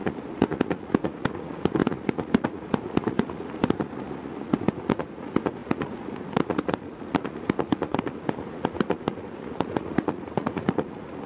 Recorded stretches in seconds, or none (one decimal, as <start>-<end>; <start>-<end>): none